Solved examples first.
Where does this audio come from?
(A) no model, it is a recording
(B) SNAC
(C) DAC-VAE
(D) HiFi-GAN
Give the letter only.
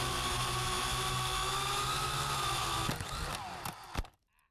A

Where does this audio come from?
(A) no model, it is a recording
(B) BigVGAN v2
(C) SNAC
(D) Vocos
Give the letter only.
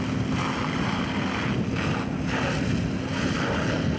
A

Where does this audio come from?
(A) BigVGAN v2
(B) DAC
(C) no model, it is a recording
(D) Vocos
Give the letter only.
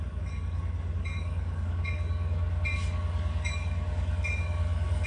B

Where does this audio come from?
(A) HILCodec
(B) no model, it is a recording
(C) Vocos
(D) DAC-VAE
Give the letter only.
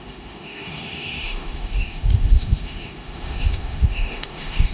D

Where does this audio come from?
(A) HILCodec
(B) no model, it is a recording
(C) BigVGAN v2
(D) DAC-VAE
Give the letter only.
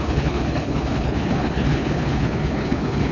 A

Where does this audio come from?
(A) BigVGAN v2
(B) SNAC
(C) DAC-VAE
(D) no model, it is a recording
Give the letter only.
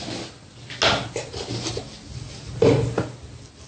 D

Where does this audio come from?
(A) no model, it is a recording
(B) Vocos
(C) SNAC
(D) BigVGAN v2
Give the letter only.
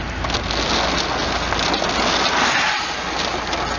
A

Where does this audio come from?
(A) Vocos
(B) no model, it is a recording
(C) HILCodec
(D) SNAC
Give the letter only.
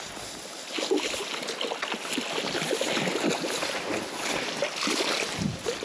B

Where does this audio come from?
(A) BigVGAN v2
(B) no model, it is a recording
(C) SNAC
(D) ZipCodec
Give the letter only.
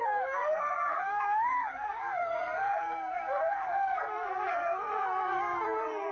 C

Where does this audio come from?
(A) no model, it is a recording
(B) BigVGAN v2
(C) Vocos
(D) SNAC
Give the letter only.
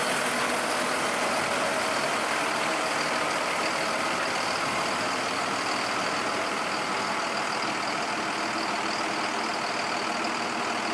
A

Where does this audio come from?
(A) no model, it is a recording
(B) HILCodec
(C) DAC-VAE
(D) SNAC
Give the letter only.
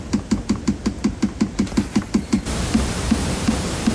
A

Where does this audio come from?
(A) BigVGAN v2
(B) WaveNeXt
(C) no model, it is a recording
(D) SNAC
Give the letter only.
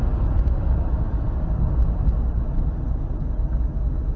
C